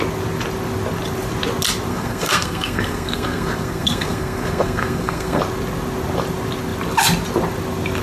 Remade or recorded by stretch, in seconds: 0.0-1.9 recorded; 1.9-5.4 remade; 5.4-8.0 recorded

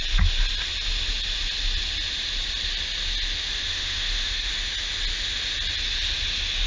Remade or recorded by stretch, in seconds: 0.0-3.7 recorded; 3.7-4.5 remade; 4.5-6.7 recorded

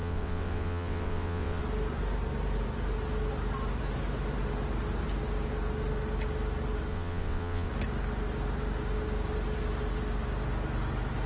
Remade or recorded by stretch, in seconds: 0.0-1.6 remade; 1.6-6.9 recorded; 6.9-7.7 remade; 7.7-11.3 recorded